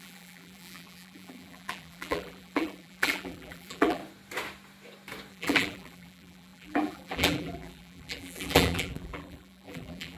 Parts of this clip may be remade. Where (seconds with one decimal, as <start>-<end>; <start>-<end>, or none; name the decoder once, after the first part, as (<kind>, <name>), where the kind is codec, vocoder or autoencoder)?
0.0-4.0 (vocoder, BigVGAN v2); 5.3-10.2